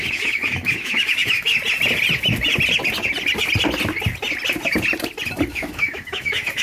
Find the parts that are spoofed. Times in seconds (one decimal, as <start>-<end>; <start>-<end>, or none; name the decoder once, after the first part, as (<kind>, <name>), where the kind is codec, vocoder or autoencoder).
0.0-1.5 (autoencoder, DAC-VAE); 5.5-6.6